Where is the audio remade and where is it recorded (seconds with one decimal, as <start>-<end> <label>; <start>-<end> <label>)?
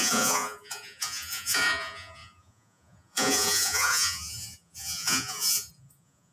0.0-6.3 remade